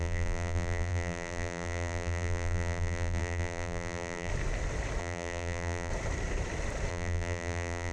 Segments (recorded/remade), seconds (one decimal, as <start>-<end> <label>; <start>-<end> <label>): 0.0-4.3 remade; 4.3-5.0 recorded; 5.0-5.9 remade; 5.9-6.9 recorded; 6.9-7.9 remade